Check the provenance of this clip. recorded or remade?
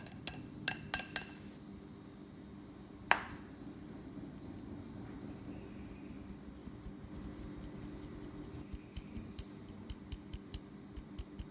recorded